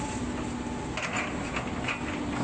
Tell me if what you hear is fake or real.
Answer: real